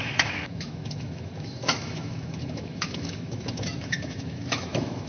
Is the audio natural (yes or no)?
no